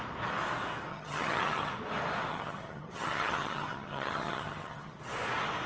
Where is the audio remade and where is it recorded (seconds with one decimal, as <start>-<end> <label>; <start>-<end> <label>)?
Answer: 0.0-0.9 recorded; 0.9-1.7 remade; 1.7-2.3 recorded; 2.3-5.0 remade; 5.0-5.7 recorded